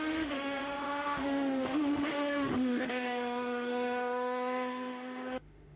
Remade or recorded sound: remade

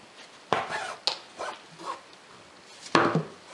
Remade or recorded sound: recorded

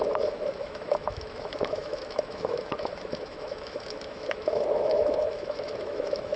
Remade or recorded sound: remade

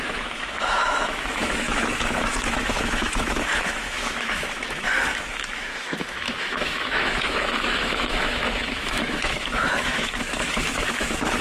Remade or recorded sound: remade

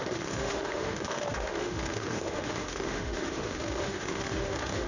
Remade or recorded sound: remade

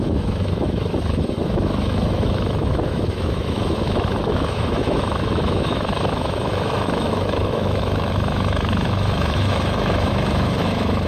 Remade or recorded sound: remade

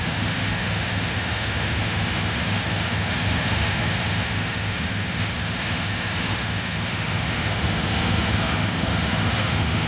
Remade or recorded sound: remade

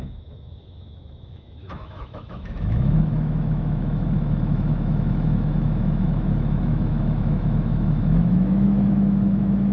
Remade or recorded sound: remade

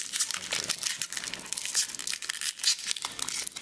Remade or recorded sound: recorded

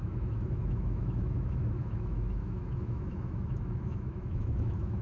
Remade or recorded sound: remade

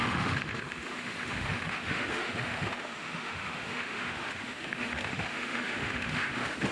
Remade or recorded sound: remade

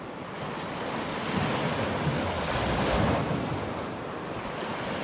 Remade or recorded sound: recorded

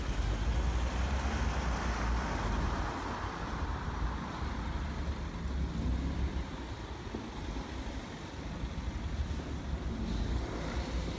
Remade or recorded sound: recorded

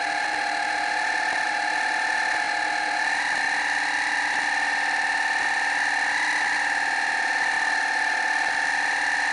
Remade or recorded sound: recorded